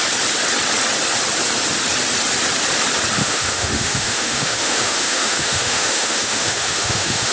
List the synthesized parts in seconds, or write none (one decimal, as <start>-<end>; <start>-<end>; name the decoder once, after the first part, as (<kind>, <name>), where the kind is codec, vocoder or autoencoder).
3.2-7.3 (autoencoder, DAC-VAE)